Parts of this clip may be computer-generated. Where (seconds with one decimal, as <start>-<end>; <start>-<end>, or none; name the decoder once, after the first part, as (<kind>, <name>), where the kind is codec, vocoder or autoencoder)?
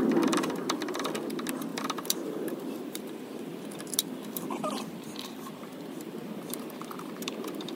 1.7-3.0 (vocoder, BigVGAN v2); 3.5-7.8